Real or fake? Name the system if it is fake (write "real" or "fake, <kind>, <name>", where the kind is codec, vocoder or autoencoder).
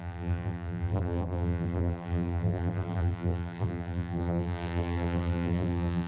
fake, vocoder, BigVGAN v2